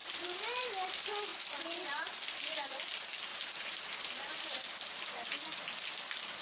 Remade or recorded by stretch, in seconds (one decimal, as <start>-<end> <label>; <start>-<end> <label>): 0.0-0.7 remade; 0.7-3.3 recorded; 3.3-5.1 remade; 5.1-6.4 recorded